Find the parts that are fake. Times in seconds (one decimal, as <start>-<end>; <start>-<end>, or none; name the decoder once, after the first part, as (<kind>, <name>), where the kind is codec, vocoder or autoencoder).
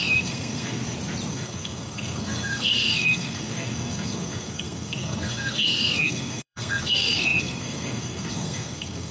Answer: 0.0-0.8 (codec, SNAC); 1.3-9.1